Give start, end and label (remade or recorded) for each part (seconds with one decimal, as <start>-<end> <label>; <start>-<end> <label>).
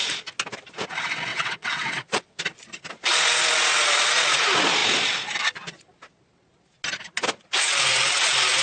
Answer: 0.0-1.3 recorded; 1.3-2.4 remade; 2.4-8.6 recorded